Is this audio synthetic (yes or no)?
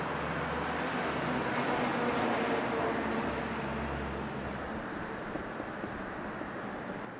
no